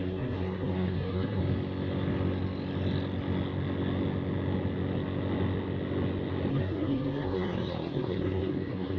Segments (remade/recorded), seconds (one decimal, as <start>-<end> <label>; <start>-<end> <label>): 0.0-1.4 remade; 1.4-6.5 recorded; 6.5-9.0 remade